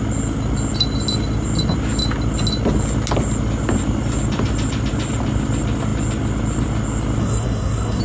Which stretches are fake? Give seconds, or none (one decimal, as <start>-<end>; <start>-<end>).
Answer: 7.2-8.0